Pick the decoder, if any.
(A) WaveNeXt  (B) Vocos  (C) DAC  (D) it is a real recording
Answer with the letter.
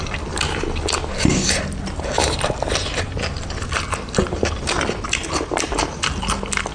D